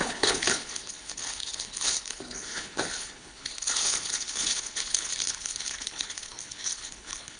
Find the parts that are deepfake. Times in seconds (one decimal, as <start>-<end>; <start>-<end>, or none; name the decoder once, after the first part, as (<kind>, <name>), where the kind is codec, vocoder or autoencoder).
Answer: 0.0-7.4 (codec, HILCodec)

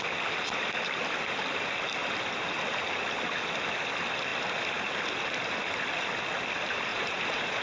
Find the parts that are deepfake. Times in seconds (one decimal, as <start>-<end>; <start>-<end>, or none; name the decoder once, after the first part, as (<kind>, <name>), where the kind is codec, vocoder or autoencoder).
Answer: 6.9-7.6 (vocoder, Vocos)